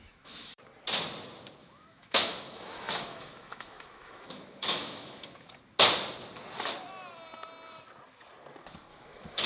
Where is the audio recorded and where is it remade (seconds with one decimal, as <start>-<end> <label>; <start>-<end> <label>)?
0.0-0.6 remade; 0.6-1.6 recorded; 1.6-5.5 remade; 5.5-8.9 recorded; 8.9-9.5 remade